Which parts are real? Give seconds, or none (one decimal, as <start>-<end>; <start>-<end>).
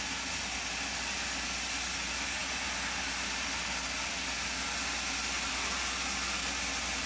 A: 0.0-7.1